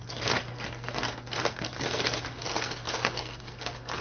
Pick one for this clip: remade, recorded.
remade